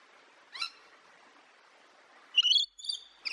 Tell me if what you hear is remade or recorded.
recorded